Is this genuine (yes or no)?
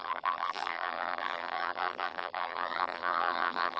no